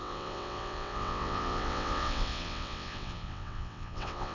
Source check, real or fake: fake